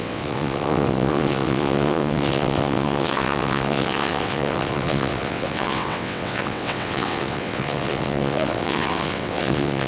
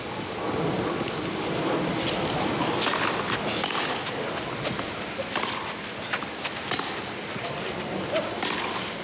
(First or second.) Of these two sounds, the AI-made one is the first